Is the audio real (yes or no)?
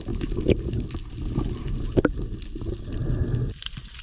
yes